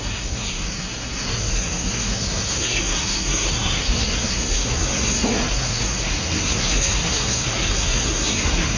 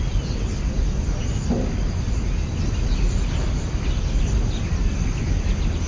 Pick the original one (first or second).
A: second